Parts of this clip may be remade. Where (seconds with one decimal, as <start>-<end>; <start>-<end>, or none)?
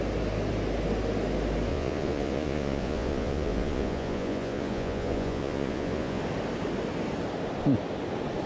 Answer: 1.7-6.2